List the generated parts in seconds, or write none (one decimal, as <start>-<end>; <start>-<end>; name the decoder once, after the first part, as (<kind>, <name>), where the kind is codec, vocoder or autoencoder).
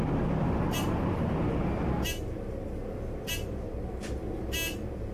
none